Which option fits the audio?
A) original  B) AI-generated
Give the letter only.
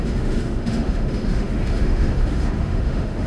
B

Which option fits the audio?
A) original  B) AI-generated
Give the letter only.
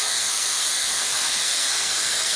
B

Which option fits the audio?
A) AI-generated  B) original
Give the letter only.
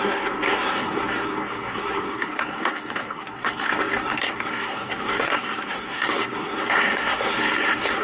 A